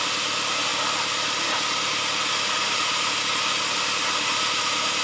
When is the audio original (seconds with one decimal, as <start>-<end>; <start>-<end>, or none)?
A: 0.0-5.0